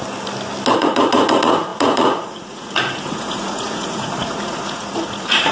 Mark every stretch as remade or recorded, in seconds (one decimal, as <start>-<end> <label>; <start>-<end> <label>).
0.0-0.8 recorded; 0.8-5.5 remade